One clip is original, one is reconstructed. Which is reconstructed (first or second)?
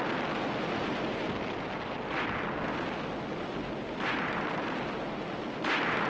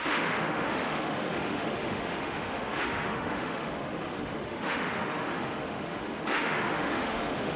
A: second